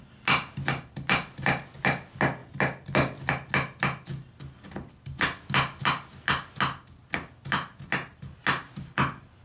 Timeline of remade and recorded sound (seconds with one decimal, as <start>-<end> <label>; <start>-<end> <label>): 0.0-9.4 recorded

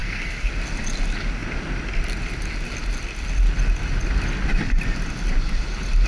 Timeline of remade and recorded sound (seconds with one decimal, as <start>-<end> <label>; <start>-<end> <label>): 0.0-0.5 remade; 0.5-6.1 recorded

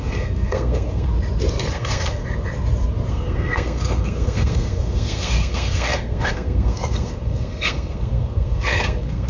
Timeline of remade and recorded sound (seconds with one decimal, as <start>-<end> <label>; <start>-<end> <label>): 0.0-1.1 remade; 1.1-1.7 recorded; 1.7-2.2 remade; 2.2-3.1 recorded; 3.1-9.3 remade

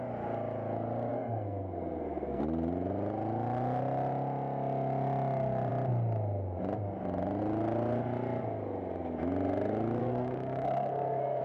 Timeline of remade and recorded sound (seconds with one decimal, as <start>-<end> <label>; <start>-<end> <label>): 0.0-1.1 recorded; 1.1-2.4 remade; 2.4-10.0 recorded; 10.0-11.4 remade

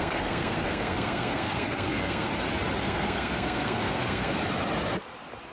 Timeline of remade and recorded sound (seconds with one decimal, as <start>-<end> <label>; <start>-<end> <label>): 0.0-2.3 remade; 2.3-2.8 recorded; 2.8-4.4 remade; 4.4-5.5 recorded